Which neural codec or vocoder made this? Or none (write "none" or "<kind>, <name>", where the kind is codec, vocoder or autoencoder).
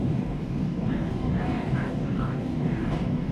codec, DAC